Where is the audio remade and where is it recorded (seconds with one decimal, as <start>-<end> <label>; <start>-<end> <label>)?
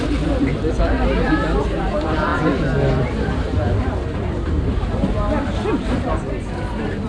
0.0-7.1 remade